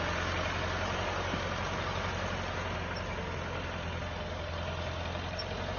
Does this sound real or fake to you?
real